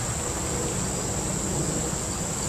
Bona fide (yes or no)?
yes